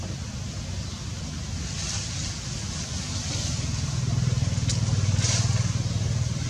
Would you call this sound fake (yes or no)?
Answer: no